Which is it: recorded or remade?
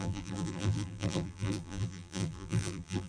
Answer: remade